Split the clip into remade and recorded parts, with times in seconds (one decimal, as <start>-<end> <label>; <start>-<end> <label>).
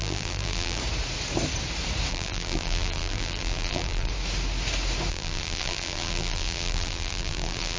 0.0-0.8 remade; 0.8-2.1 recorded; 2.1-4.1 remade; 4.1-5.1 recorded; 5.1-7.8 remade